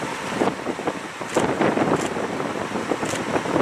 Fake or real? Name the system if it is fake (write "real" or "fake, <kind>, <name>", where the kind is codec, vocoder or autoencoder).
fake, vocoder, BigVGAN v2